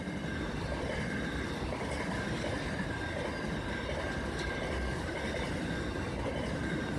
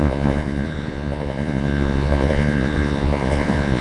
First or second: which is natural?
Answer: first